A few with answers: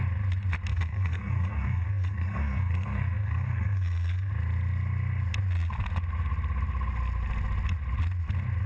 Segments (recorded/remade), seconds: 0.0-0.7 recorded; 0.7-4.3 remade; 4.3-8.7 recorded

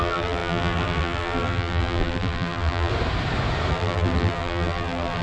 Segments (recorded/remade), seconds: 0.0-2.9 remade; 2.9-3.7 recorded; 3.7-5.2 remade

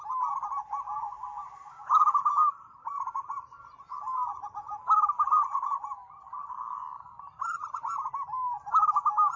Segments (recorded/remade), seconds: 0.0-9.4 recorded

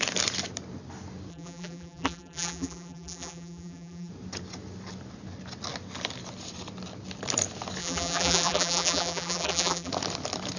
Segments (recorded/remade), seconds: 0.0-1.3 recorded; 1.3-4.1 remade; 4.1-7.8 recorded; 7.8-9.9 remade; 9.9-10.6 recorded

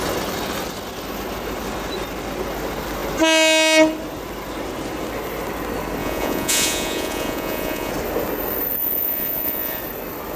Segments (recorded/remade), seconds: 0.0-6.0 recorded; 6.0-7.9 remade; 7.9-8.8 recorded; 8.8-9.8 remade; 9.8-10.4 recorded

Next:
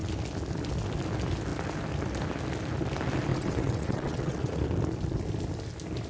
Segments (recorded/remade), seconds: 0.0-3.3 recorded; 3.3-4.6 remade; 4.6-6.1 recorded